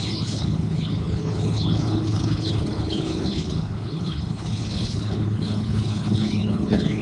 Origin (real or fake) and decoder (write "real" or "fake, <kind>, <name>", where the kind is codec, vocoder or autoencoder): fake, codec, HILCodec